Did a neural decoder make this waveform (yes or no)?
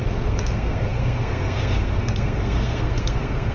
yes